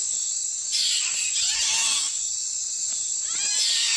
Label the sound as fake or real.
real